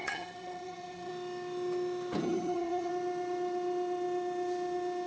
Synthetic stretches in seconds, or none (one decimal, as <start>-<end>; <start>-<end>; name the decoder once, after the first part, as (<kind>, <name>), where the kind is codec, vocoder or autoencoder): 0.0-1.1 (vocoder, HiFi-GAN); 2.2-2.9